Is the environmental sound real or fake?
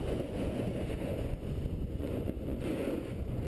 fake